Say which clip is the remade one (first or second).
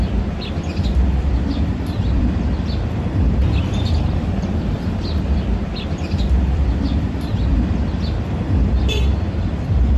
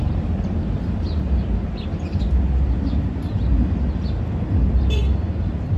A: first